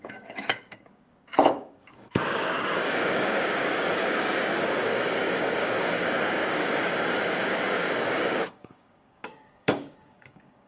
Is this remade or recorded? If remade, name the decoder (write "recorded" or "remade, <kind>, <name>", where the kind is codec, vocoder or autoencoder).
remade, codec, DAC